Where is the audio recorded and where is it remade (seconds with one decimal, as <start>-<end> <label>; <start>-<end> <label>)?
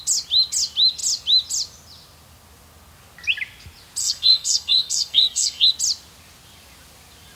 0.0-4.0 recorded; 4.0-5.7 remade; 5.7-7.4 recorded